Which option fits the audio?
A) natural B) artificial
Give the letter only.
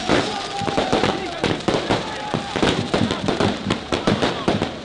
B